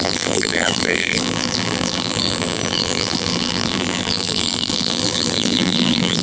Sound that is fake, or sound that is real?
fake